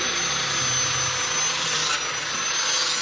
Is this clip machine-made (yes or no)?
no